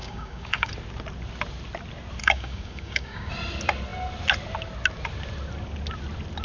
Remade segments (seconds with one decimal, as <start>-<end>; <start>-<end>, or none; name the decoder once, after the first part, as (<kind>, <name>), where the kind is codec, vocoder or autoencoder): 0.0-0.7 (codec, DAC); 2.2-3.3